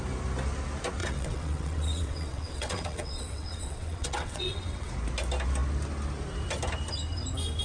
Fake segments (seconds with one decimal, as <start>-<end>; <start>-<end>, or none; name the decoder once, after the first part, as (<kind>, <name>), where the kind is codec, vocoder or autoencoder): 1.0-4.9 (vocoder, WaveNeXt)

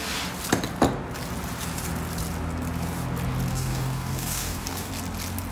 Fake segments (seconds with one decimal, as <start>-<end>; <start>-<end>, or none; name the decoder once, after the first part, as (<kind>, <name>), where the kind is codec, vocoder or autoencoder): 3.5-4.9 (codec, DAC)

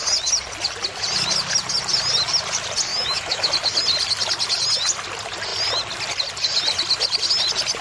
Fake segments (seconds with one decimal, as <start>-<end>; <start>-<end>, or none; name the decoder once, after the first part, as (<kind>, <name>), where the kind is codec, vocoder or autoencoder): 2.9-3.5 (autoencoder, DAC-VAE)

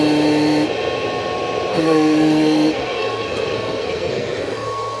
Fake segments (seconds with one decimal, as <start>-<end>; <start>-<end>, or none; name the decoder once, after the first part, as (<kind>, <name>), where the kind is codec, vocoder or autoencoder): 1.7-5.0 (codec, SNAC)

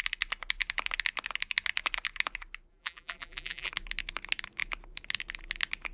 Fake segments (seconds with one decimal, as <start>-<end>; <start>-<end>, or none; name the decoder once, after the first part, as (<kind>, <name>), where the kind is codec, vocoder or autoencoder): 2.7-3.7 (vocoder, BigVGAN v2)

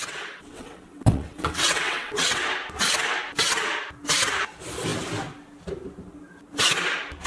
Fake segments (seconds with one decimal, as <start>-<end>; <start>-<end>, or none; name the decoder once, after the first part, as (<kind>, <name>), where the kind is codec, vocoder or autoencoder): 0.0-2.4 (vocoder, WaveNeXt)

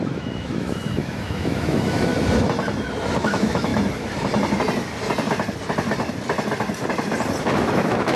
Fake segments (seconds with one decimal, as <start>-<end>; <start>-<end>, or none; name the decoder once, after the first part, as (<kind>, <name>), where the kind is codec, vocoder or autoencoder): 0.0-2.1 (autoencoder, DAC-VAE); 3.2-3.7; 7.4-8.2

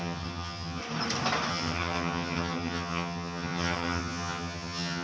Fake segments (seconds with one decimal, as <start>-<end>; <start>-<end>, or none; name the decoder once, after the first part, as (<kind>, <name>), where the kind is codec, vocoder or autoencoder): 0.0-0.8 (vocoder, HiFi-GAN); 1.5-5.0